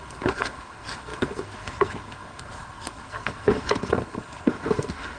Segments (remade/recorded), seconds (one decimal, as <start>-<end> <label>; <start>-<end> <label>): 0.0-5.2 remade